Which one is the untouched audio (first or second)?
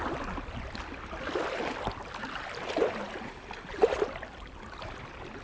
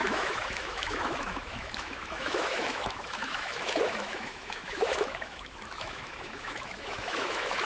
first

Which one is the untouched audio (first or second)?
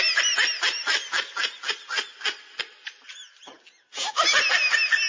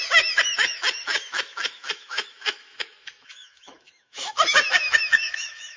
first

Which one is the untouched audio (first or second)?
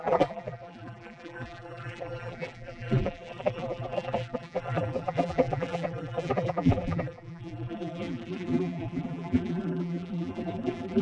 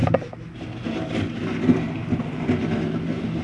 second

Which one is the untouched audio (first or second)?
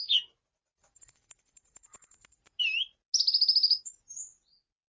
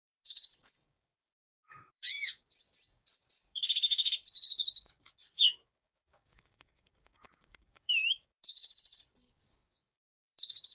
first